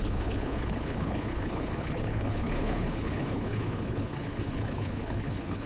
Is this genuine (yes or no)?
no